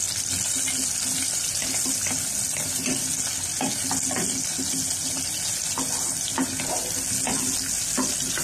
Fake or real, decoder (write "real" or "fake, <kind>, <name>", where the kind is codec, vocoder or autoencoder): real